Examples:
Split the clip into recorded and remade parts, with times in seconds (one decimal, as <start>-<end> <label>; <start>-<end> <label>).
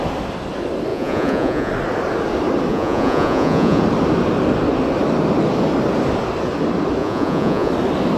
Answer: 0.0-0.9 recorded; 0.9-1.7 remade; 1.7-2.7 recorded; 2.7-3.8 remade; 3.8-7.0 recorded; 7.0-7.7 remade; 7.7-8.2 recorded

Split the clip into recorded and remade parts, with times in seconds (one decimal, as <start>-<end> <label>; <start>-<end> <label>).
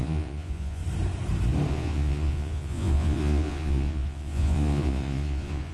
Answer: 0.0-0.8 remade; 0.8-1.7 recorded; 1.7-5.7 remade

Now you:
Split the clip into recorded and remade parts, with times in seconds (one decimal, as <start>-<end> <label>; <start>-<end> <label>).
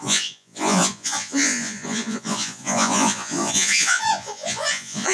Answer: 0.0-5.1 remade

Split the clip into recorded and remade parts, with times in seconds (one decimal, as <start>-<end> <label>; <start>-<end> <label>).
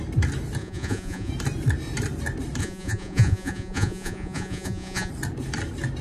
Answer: 0.0-0.6 recorded; 0.6-1.3 remade; 1.3-2.6 recorded; 2.6-5.1 remade; 5.1-6.0 recorded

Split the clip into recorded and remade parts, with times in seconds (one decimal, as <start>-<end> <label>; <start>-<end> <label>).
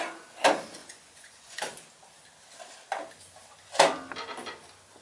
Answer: 0.0-0.8 recorded; 0.8-1.6 remade; 1.6-5.0 recorded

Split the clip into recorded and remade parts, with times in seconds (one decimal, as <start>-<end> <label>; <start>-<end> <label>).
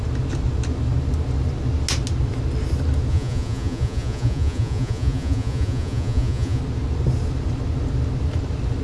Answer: 0.0-3.1 recorded; 3.1-6.6 remade; 6.6-8.8 recorded